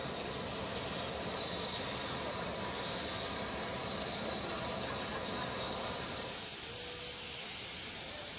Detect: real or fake real